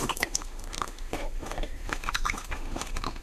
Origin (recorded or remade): remade